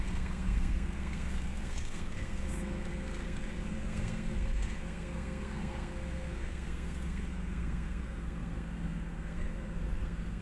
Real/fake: fake